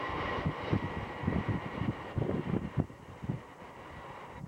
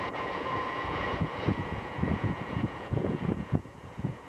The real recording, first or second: first